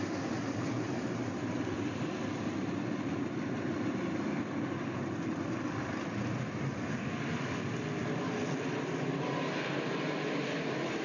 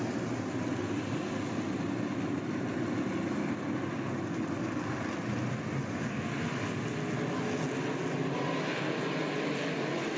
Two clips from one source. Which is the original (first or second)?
second